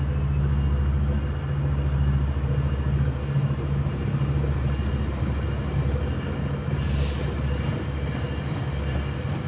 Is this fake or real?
real